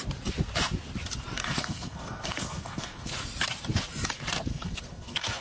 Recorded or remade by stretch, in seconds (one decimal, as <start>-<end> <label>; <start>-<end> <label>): 0.0-1.4 recorded; 1.4-3.1 remade; 3.1-4.5 recorded; 4.5-5.4 remade

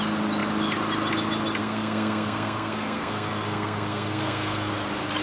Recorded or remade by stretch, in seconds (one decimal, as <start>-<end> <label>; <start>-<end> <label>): 0.0-1.6 recorded; 1.6-4.7 remade; 4.7-5.2 recorded

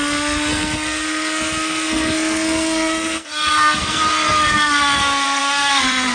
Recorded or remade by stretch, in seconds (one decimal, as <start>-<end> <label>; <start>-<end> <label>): 0.0-6.1 remade

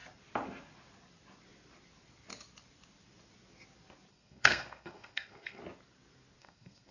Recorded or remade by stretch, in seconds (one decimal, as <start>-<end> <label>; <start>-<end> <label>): 0.0-4.1 recorded; 4.1-5.6 remade; 5.6-6.4 recorded; 6.4-6.9 remade

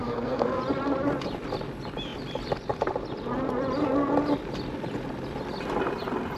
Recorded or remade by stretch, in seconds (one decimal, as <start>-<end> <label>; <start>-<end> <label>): 0.0-0.6 remade; 0.6-6.4 recorded

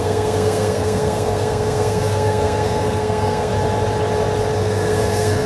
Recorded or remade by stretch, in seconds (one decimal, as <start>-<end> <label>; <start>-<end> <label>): 0.0-3.5 remade; 3.5-4.5 recorded; 4.5-5.5 remade

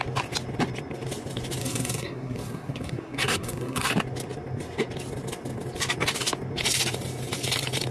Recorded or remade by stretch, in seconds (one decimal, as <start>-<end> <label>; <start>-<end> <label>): 0.0-1.6 recorded; 1.6-3.9 remade; 3.9-7.9 recorded